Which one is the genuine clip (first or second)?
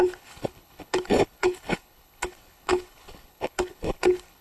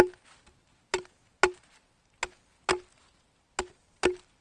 second